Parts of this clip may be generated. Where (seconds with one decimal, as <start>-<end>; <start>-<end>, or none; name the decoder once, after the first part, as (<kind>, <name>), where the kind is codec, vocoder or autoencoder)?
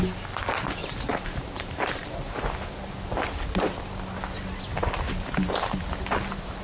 0.8-2.5 (vocoder, BigVGAN v2)